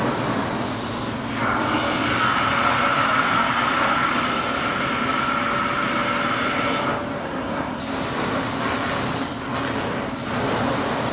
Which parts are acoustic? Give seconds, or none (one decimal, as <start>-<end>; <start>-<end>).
0.0-7.2; 7.8-11.1